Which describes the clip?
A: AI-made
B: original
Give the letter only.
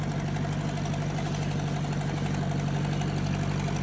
B